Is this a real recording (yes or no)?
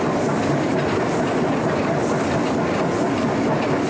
yes